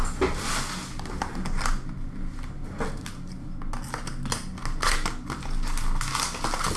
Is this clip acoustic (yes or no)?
yes